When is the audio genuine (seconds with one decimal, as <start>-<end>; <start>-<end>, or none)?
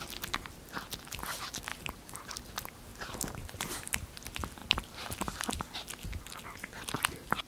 0.0-1.7; 2.3-2.9; 4.1-4.6; 5.2-7.5